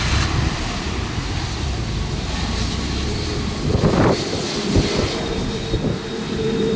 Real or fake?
fake